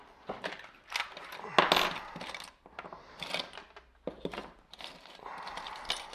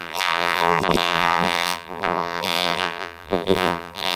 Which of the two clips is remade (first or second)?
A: second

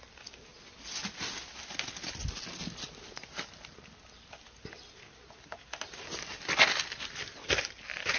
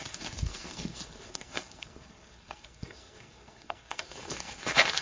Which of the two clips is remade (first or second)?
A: second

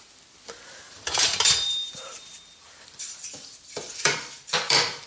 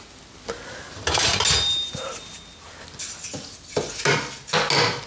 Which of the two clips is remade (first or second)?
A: first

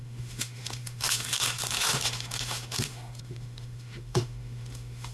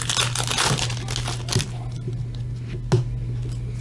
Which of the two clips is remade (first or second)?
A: first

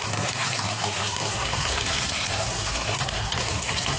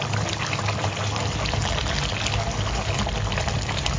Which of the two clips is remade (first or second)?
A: first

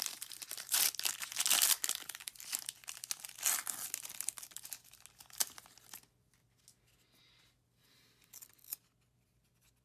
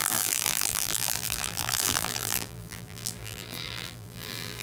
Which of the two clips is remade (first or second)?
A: second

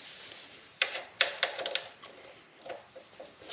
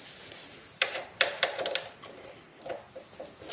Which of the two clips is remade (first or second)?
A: first